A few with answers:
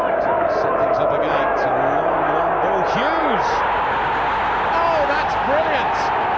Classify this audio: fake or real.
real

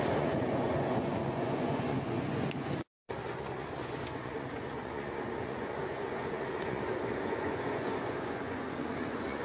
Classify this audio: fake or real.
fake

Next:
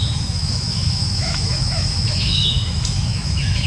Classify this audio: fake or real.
fake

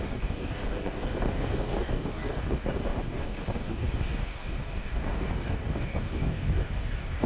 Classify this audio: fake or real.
fake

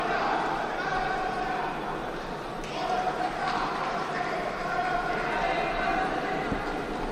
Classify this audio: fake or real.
real